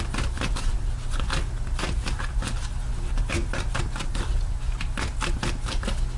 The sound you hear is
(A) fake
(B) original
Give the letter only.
B